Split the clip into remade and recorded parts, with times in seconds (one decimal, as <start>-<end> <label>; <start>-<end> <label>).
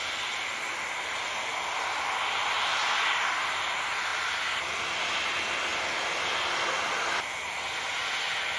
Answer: 0.0-8.6 recorded